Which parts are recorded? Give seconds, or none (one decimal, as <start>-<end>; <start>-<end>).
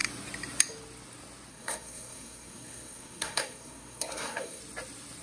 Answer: 0.0-1.5; 4.6-5.2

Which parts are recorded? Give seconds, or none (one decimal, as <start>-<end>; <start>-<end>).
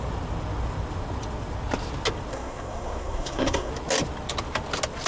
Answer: 0.0-2.3; 3.7-5.1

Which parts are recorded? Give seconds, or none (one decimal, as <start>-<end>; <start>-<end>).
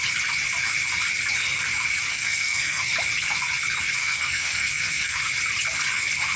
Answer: 0.0-2.1; 2.9-4.0; 5.2-6.4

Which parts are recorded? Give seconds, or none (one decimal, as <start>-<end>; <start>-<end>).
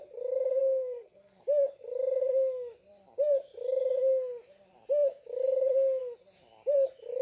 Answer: 0.0-0.6; 1.4-7.2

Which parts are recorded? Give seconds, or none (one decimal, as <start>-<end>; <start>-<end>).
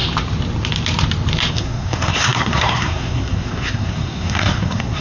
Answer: 0.0-1.5